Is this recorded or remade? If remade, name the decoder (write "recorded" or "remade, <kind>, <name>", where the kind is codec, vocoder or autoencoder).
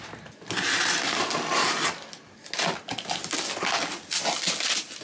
recorded